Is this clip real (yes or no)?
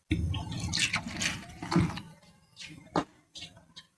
yes